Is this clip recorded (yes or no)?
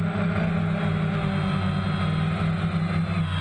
yes